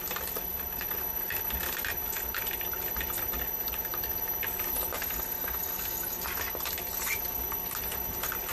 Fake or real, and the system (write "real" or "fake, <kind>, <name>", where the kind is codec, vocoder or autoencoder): real